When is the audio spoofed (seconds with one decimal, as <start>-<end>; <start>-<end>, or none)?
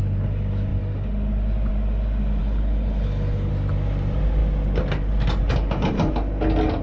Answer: 2.4-3.5